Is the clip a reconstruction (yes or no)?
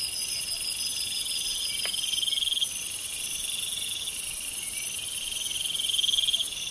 no